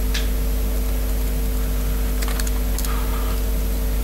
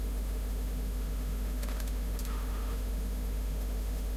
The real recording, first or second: first